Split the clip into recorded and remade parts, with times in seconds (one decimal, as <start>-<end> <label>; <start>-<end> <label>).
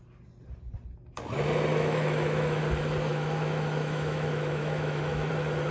0.0-1.7 recorded; 1.7-2.6 remade; 2.6-3.1 recorded; 3.1-5.3 remade; 5.3-5.7 recorded